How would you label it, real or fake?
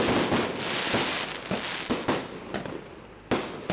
real